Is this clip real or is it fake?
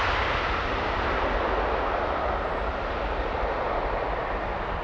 real